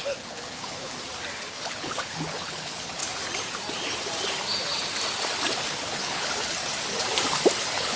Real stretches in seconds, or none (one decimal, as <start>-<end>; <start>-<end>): 0.9-1.5; 3.0-5.5; 6.6-7.6